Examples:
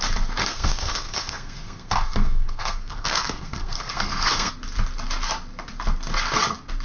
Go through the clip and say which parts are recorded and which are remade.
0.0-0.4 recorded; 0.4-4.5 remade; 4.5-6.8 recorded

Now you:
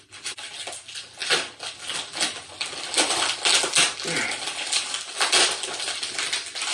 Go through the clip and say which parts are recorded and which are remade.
0.0-6.7 recorded

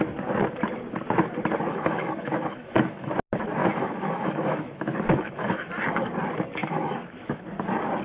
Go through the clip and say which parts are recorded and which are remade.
0.0-1.7 recorded; 1.7-3.1 remade; 3.1-3.6 recorded; 3.6-5.7 remade; 5.7-6.6 recorded; 6.6-7.4 remade; 7.4-8.0 recorded

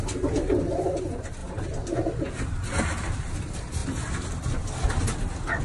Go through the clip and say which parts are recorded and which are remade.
0.0-5.6 recorded

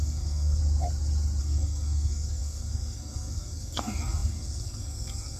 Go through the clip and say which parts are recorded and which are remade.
0.0-0.6 remade; 0.6-1.4 recorded; 1.4-5.4 remade

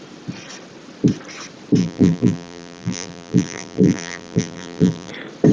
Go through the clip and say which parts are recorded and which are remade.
0.0-1.8 recorded; 1.8-5.1 remade; 5.1-5.5 recorded

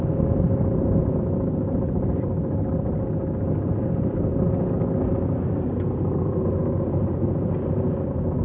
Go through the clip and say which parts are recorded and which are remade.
0.0-8.4 recorded

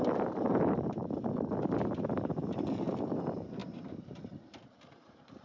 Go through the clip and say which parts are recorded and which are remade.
0.0-1.0 remade; 1.0-2.1 recorded; 2.1-5.4 remade